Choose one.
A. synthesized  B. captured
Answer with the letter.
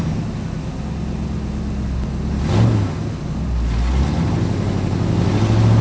B